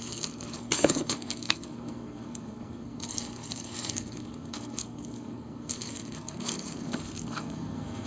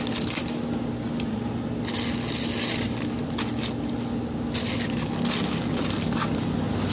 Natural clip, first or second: second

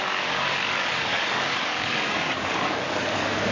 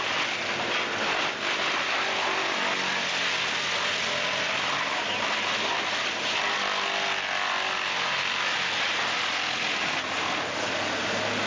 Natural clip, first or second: second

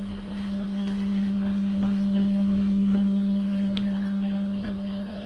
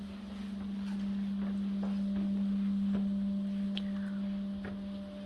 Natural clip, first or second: second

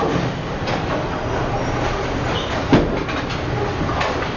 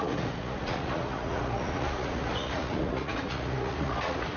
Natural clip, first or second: first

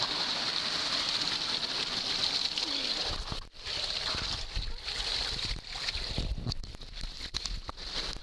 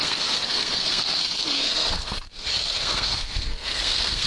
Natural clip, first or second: first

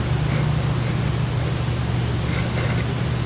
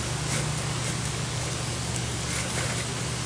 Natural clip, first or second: first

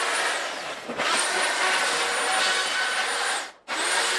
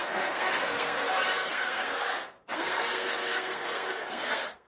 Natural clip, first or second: first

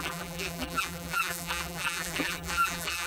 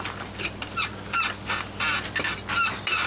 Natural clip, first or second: second